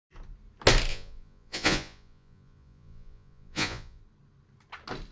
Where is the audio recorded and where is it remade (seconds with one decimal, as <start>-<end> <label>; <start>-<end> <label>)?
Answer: 0.0-0.9 recorded; 0.9-4.0 remade; 4.0-5.1 recorded